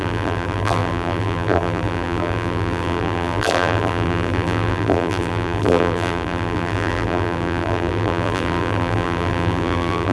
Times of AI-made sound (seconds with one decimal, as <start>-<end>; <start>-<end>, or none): 0.0-10.1